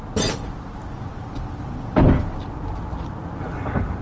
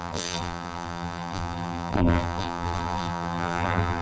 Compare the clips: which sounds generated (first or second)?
second